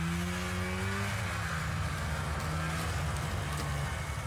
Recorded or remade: recorded